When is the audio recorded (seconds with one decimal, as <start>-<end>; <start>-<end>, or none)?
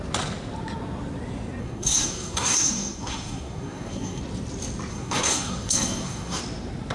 0.0-1.6; 4.2-4.9; 6.4-6.9